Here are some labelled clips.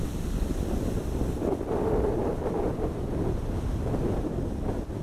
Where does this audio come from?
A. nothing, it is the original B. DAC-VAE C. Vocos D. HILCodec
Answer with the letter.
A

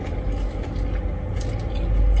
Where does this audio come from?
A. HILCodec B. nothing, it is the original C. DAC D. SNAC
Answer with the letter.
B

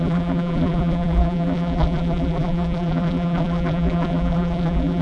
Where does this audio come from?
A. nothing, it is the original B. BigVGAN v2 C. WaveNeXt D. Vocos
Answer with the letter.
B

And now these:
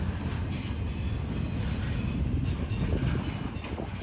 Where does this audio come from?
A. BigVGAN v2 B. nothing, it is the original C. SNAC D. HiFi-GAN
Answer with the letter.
B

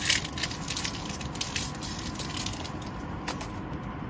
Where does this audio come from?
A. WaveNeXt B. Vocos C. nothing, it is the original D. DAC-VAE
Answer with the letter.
C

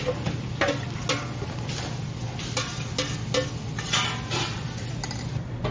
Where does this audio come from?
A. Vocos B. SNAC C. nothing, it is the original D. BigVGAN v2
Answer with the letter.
C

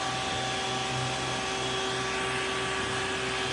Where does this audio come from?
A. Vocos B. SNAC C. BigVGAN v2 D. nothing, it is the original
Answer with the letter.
D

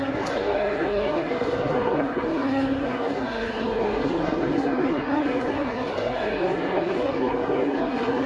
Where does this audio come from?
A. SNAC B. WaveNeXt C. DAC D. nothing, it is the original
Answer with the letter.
A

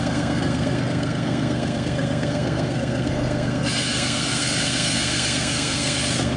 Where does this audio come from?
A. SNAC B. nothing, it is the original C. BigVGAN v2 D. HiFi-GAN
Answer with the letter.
A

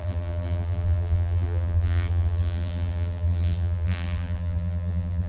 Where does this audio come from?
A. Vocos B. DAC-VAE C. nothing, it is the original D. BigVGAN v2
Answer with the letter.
D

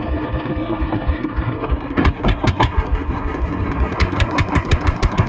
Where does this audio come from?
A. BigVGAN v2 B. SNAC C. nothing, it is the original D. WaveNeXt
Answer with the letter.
B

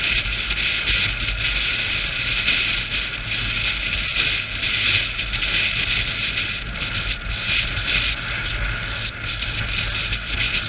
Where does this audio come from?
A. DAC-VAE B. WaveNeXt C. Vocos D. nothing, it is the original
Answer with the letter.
D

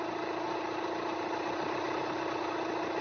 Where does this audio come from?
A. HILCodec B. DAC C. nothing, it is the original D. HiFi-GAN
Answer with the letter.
C